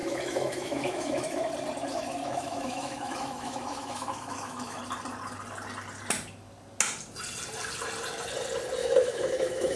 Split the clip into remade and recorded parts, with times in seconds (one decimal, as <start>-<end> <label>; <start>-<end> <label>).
0.0-1.5 remade; 1.5-1.9 recorded; 1.9-4.8 remade; 4.8-8.8 recorded; 8.8-9.8 remade